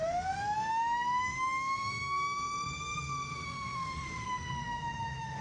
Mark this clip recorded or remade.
remade